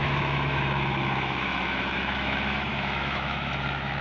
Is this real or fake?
fake